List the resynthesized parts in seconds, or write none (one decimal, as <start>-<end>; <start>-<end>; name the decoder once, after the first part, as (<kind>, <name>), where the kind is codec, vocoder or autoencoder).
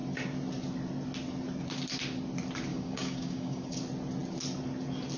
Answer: 2.7-3.8 (codec, DAC)